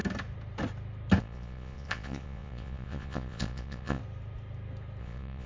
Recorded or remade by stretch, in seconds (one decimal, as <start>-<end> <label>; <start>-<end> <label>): 0.0-1.2 recorded; 1.2-4.0 remade; 4.0-5.0 recorded; 5.0-5.5 remade